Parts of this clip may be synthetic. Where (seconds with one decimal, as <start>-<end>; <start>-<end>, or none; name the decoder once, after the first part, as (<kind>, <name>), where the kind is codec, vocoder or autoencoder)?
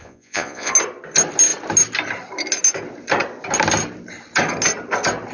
0.0-0.7 (vocoder, Vocos)